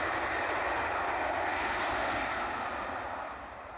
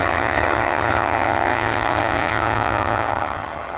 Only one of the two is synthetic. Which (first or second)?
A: second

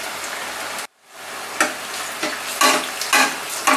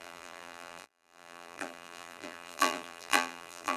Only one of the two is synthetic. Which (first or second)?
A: second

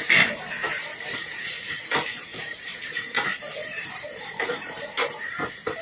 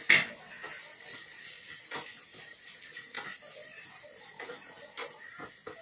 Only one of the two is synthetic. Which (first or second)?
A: first